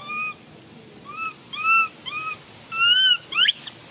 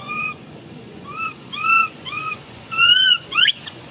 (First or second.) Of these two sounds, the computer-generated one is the second